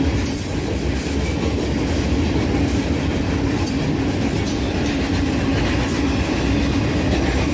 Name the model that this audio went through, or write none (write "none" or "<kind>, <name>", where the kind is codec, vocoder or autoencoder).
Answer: none